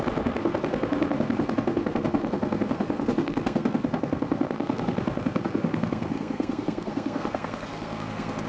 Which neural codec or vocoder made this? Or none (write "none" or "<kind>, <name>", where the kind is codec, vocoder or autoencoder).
codec, SNAC